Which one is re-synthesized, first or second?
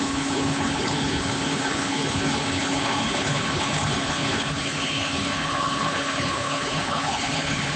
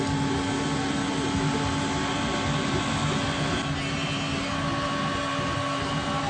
first